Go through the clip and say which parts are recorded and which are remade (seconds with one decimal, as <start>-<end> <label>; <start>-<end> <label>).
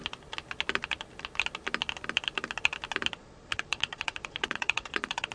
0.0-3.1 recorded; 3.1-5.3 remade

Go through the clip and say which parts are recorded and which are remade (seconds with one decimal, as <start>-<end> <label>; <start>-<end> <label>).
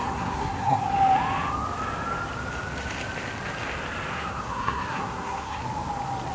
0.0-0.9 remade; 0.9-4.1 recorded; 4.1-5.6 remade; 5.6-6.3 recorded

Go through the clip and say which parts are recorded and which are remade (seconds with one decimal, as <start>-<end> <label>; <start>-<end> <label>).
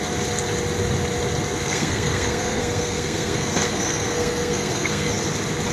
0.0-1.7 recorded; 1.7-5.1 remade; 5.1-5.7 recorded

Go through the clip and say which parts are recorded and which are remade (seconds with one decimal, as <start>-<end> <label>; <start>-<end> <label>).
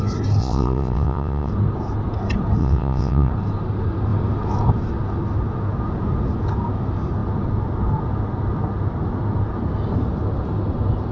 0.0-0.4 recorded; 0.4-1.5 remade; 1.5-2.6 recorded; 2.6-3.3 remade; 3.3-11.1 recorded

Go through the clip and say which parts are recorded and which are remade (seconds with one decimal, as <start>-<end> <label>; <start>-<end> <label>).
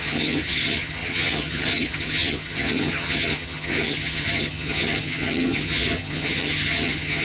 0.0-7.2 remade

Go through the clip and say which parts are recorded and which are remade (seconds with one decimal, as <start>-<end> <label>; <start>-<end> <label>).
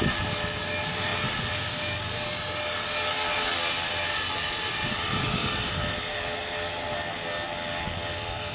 0.0-8.5 recorded